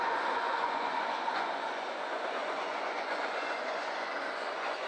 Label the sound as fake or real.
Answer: fake